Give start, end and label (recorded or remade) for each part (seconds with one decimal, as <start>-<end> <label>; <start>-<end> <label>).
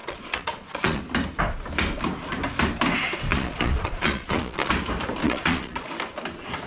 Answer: 0.0-1.0 remade; 1.0-3.3 recorded; 3.3-4.7 remade; 4.7-5.2 recorded; 5.2-5.9 remade; 5.9-6.7 recorded